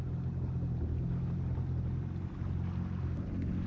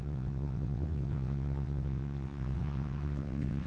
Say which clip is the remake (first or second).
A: second